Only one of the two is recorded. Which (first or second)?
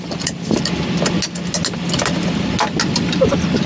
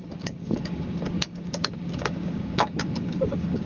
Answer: first